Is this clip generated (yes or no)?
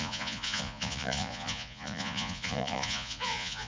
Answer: yes